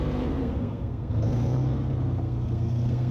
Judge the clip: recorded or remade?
remade